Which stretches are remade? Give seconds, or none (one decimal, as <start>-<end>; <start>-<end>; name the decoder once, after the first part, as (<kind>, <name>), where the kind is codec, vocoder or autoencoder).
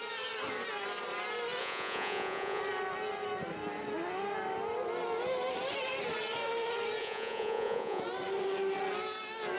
1.6-2.6 (vocoder, Vocos); 7.0-8.0